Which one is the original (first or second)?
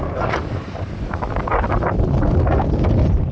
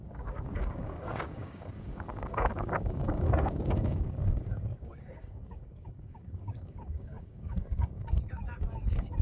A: first